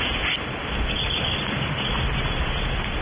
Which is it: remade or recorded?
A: recorded